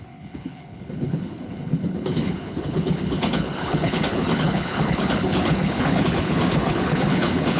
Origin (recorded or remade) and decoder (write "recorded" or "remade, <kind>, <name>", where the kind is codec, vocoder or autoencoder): remade, codec, HILCodec